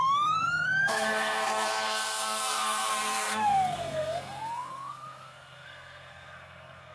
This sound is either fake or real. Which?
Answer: fake